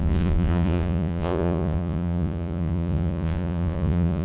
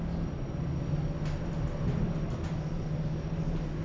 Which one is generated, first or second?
first